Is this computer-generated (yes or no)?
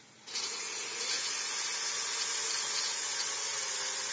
yes